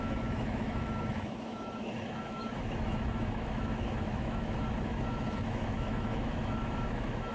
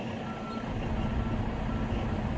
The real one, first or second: second